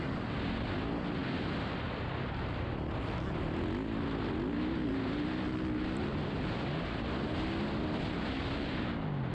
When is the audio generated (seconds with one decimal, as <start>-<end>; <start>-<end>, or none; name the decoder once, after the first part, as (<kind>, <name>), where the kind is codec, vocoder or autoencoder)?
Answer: none